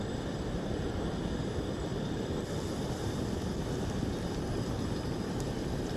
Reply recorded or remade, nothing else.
remade